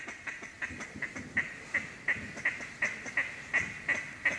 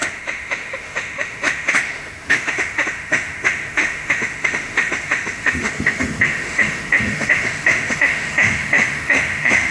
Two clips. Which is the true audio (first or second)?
first